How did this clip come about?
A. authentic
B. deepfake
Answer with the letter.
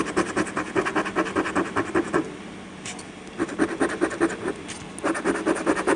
A